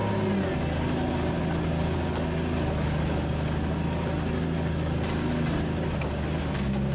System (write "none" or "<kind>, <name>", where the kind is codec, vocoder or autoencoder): none